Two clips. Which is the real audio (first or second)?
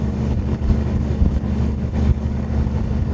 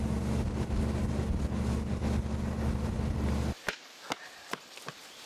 second